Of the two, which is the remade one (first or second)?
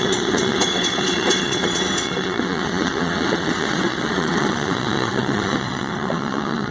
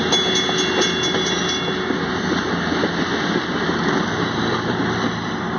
first